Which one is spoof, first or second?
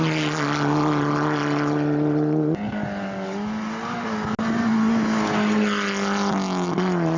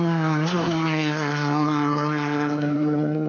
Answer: second